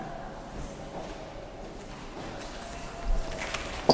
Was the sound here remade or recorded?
recorded